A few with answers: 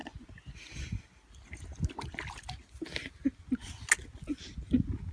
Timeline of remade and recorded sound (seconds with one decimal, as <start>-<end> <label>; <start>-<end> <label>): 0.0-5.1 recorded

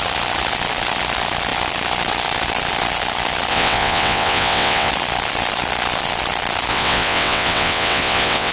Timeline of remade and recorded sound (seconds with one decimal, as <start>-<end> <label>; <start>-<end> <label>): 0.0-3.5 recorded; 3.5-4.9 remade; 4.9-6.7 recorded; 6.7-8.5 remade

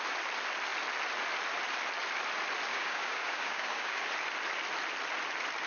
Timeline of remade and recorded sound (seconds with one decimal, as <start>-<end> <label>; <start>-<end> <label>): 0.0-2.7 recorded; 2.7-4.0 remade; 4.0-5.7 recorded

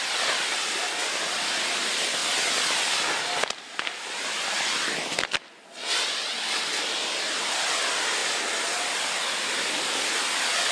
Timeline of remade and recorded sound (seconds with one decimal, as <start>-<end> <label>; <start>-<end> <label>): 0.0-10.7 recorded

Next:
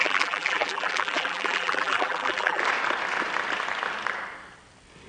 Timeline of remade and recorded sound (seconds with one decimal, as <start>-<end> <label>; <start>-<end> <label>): 0.0-2.6 remade; 2.6-5.1 recorded

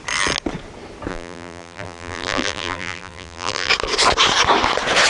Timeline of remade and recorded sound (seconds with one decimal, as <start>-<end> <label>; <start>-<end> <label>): 0.0-1.1 recorded; 1.1-3.7 remade; 3.7-5.1 recorded

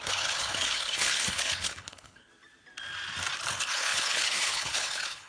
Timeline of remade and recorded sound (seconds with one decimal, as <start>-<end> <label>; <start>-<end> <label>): 0.0-2.3 remade; 2.3-3.5 recorded; 3.5-5.3 remade

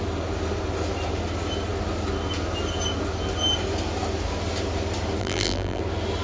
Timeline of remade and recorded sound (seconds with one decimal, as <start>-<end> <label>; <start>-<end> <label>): 0.0-5.2 recorded; 5.2-5.8 remade; 5.8-6.2 recorded